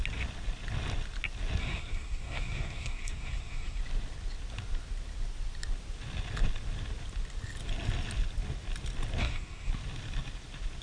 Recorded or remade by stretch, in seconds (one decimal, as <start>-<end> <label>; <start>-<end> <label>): 0.0-1.6 recorded; 1.6-3.8 remade; 3.8-9.2 recorded; 9.2-9.7 remade; 9.7-10.8 recorded